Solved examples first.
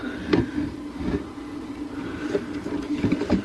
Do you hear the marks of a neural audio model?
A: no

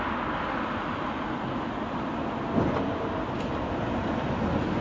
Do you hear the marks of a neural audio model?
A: no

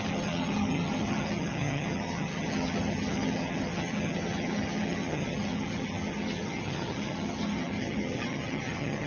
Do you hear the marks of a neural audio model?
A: yes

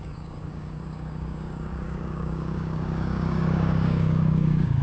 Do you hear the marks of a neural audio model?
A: yes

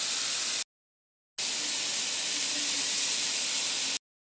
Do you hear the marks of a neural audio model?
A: no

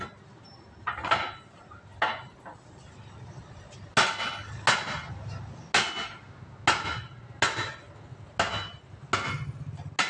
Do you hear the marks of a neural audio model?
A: no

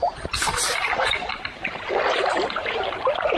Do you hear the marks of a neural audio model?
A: yes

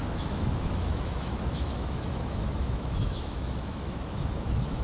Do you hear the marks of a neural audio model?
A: yes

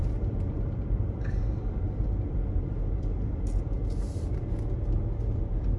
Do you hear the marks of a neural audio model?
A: no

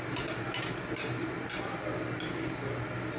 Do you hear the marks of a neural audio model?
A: no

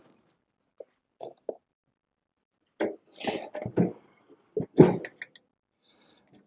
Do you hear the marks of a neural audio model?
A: no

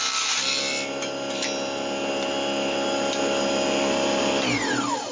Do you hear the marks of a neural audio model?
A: no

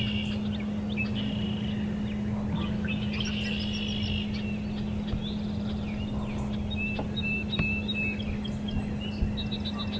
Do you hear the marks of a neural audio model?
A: no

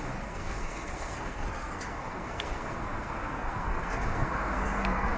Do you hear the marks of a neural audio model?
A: yes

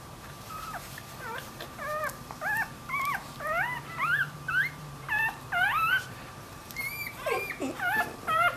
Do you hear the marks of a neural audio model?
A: yes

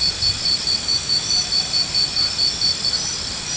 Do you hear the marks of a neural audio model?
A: no